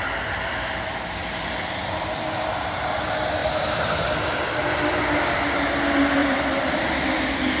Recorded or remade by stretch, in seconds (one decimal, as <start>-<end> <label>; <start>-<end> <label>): 0.0-3.4 recorded; 3.4-5.0 remade; 5.0-6.2 recorded; 6.2-6.8 remade; 6.8-7.6 recorded

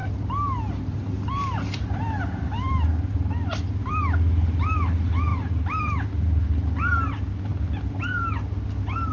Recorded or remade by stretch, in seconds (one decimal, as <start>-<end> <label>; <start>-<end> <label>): 0.0-5.3 recorded; 5.3-5.8 remade; 5.8-9.1 recorded

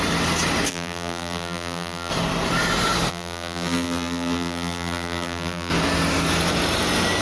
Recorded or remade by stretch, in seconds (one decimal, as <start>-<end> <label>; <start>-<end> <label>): 0.0-0.7 recorded; 0.7-2.1 remade; 2.1-3.1 recorded; 3.1-5.7 remade; 5.7-7.2 recorded

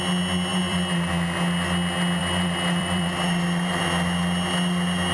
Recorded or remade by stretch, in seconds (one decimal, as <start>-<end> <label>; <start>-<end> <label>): 0.0-0.5 recorded; 0.5-1.1 remade; 1.1-2.2 recorded; 2.2-3.8 remade; 3.8-5.1 recorded

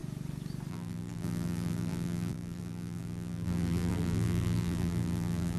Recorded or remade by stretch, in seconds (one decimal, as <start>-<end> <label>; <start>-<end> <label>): 0.0-0.7 recorded; 0.7-5.6 remade